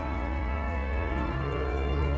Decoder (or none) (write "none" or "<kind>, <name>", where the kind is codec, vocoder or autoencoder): vocoder, Vocos